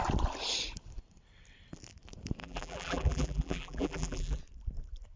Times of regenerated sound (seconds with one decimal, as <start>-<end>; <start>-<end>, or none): 2.4-4.4

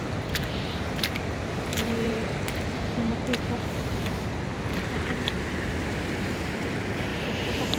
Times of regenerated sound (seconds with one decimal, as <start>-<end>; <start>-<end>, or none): 1.7-2.4; 7.1-7.8